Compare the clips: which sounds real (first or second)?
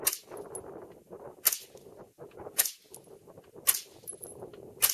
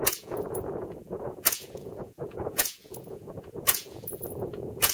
first